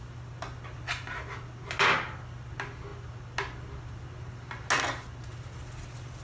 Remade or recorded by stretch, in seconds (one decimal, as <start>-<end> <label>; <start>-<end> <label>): 0.0-6.2 recorded